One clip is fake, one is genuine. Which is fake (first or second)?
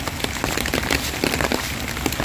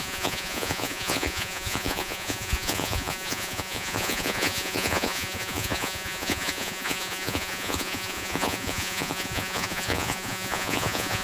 second